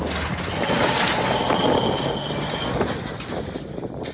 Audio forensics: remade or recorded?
recorded